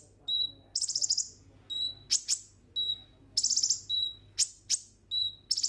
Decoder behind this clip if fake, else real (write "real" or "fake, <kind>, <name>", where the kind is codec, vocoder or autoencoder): real